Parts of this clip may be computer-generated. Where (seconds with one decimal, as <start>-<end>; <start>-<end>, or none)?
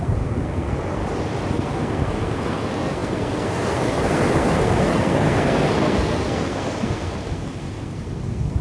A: 0.0-1.0; 1.5-8.6